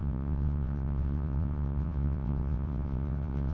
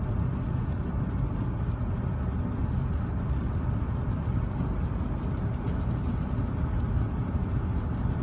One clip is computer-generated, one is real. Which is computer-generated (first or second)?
first